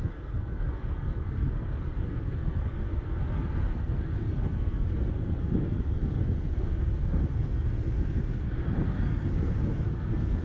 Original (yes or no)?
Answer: no